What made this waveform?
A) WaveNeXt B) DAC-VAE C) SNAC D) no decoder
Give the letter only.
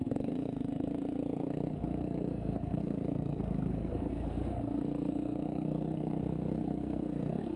C